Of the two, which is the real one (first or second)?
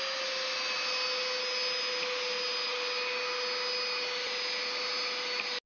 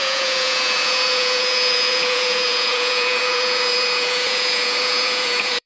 first